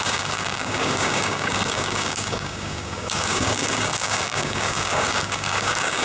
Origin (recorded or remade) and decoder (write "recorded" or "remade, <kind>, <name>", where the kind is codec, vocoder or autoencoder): remade, codec, DAC